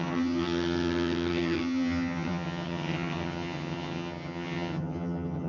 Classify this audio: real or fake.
fake